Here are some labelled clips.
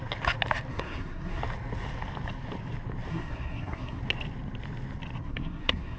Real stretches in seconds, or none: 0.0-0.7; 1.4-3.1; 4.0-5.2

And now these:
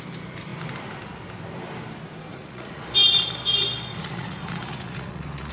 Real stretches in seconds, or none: 0.0-2.3; 2.8-3.9

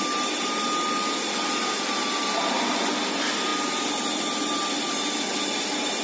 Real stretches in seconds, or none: 0.0-6.0

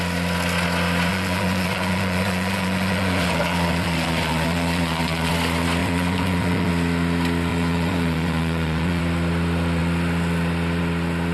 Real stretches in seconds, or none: 0.0-1.1; 5.3-5.8; 6.7-7.5; 9.0-11.3